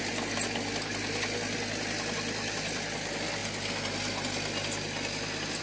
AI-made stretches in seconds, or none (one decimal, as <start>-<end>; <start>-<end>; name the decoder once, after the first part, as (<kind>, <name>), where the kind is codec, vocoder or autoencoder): none